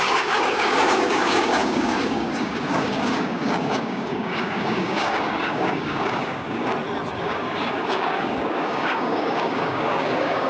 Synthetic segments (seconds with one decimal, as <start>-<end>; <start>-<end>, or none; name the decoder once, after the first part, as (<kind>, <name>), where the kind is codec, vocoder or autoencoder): 0.0-6.7 (codec, DAC); 7.2-10.5